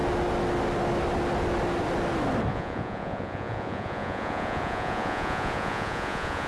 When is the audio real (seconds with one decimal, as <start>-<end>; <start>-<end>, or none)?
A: 0.0-2.5